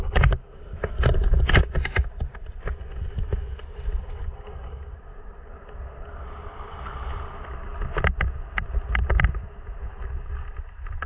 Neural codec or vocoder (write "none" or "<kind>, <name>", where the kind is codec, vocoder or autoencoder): none